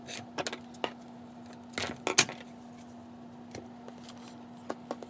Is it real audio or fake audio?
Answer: real